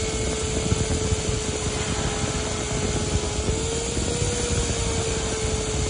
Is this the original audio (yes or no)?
yes